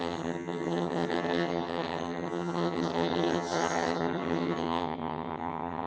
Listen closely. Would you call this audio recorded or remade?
remade